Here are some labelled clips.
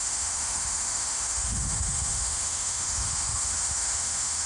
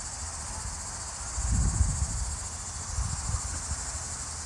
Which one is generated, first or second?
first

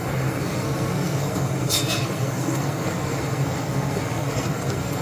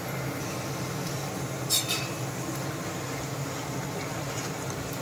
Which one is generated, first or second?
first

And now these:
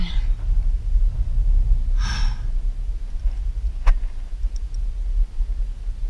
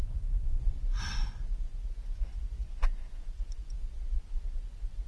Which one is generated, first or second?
second